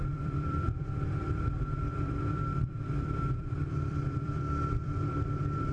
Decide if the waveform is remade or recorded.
remade